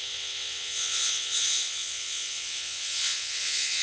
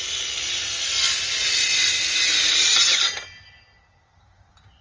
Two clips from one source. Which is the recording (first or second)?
second